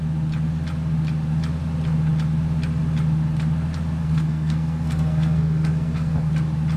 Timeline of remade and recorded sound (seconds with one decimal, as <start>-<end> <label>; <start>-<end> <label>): 0.0-4.0 recorded; 4.0-6.3 remade; 6.3-6.8 recorded